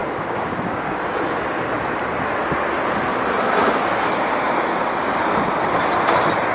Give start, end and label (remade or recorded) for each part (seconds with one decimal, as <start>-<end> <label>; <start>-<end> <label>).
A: 0.0-1.0 remade; 1.0-6.5 recorded

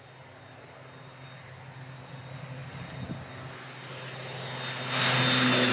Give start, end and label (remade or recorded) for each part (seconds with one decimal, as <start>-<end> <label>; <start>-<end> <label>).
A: 0.0-5.7 recorded

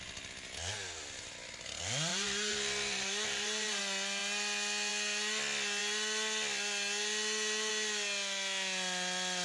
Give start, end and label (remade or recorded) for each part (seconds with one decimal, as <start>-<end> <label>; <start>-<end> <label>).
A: 0.0-2.1 recorded; 2.1-3.8 remade; 3.8-9.4 recorded

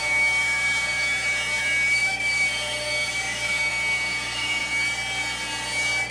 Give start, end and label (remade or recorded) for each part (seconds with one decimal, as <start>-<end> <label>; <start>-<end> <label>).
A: 0.0-4.6 remade; 4.6-6.1 recorded

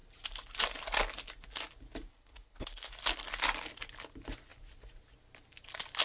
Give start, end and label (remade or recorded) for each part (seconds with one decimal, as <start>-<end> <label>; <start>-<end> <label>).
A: 0.0-2.1 recorded; 2.1-2.9 remade; 2.9-6.0 recorded

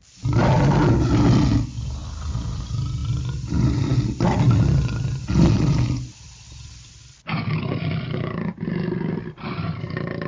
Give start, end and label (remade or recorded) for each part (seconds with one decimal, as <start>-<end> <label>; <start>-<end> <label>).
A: 0.0-10.3 recorded

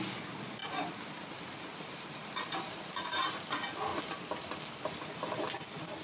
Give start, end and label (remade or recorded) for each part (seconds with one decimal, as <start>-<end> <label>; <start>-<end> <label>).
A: 0.0-0.6 recorded; 0.6-3.2 remade; 3.2-3.9 recorded; 3.9-4.9 remade; 4.9-6.0 recorded

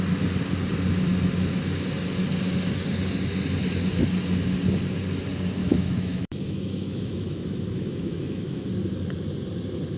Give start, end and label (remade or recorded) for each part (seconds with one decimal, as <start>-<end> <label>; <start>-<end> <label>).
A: 0.0-5.6 recorded; 5.6-8.7 remade; 8.7-10.0 recorded